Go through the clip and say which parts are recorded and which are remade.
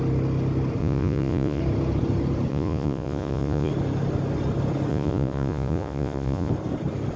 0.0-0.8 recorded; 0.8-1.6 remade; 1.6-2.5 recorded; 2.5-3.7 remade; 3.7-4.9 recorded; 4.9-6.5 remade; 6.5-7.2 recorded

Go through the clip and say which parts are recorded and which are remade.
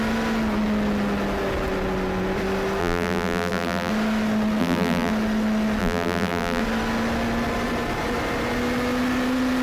0.0-2.8 recorded; 2.8-3.9 remade; 3.9-4.6 recorded; 4.6-5.1 remade; 5.1-5.8 recorded; 5.8-6.6 remade; 6.6-9.6 recorded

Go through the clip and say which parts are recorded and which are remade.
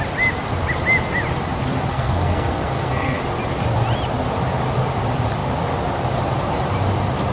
0.0-1.9 recorded; 1.9-3.2 remade; 3.2-7.3 recorded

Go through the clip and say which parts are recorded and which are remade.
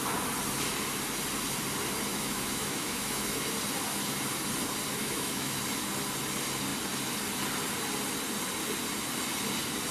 0.0-2.1 recorded; 2.1-3.5 remade; 3.5-5.0 recorded; 5.0-5.6 remade; 5.6-9.9 recorded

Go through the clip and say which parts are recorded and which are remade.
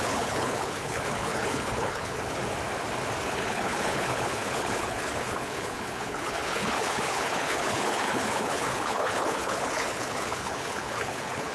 0.0-2.4 remade; 2.4-3.2 recorded; 3.2-11.5 remade